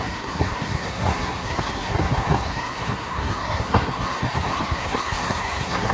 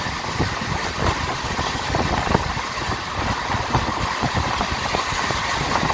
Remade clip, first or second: first